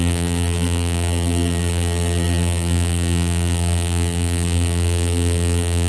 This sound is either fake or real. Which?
fake